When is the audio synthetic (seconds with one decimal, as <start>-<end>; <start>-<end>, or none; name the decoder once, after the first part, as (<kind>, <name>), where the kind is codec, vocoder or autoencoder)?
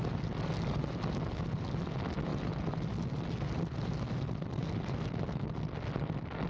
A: none